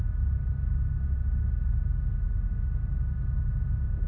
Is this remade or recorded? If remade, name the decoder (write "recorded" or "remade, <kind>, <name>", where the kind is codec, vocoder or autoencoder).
recorded